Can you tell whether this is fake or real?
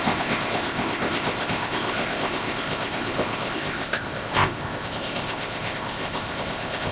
fake